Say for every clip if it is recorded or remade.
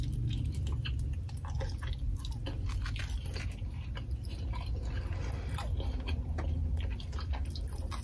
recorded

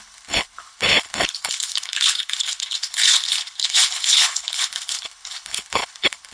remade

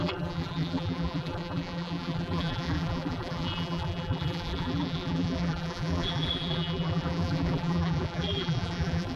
remade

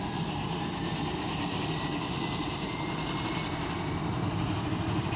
recorded